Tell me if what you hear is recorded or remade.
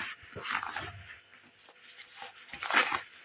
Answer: recorded